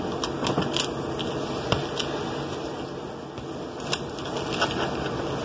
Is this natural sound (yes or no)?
yes